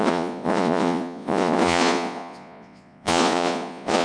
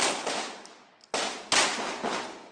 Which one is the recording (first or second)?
second